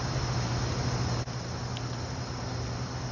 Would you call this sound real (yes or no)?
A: yes